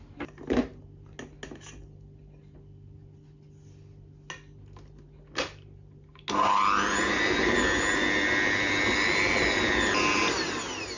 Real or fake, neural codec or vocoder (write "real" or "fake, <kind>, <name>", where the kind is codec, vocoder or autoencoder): real